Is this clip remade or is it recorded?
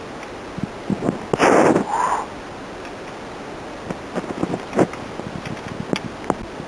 recorded